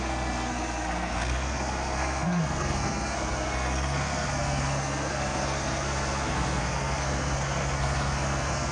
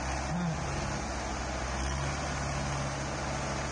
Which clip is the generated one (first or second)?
first